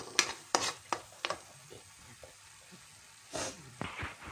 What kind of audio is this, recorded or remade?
recorded